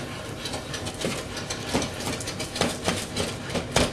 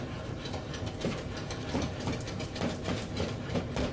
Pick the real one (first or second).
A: first